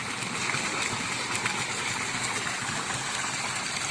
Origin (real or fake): real